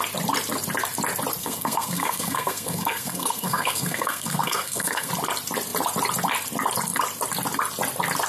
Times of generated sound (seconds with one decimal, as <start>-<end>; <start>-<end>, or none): 1.4-5.1